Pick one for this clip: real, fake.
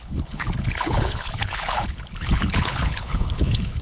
fake